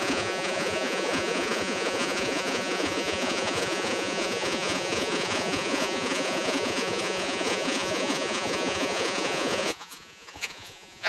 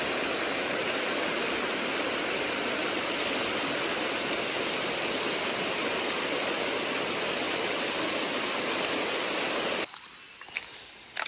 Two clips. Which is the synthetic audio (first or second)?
first